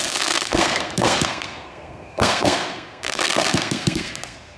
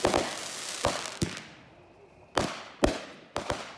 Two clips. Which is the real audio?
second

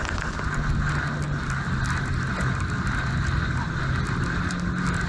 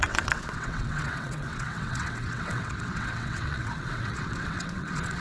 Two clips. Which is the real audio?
first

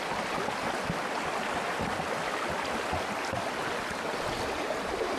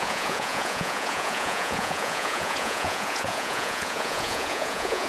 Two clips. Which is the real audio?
first